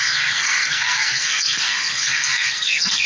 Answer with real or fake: fake